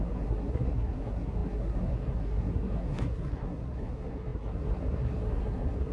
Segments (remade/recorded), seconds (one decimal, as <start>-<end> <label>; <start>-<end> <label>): 0.0-5.9 remade